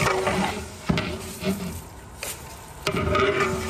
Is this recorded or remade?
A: recorded